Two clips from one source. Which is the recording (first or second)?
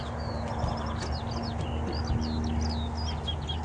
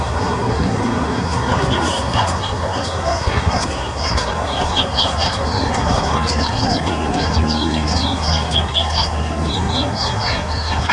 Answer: first